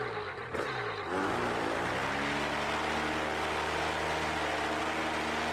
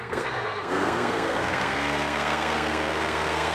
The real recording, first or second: first